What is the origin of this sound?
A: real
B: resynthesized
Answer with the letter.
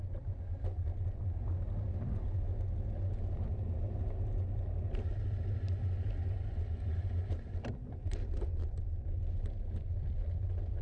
A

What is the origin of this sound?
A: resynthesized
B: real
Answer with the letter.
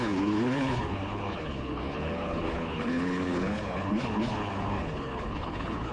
A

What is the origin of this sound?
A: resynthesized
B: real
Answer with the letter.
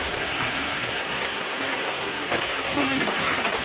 A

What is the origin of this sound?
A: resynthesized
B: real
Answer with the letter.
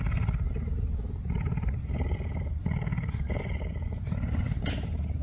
B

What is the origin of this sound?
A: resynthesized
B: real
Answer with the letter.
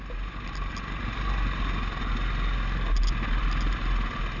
B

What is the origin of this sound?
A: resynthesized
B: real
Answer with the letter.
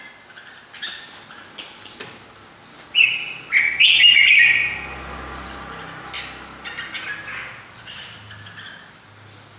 B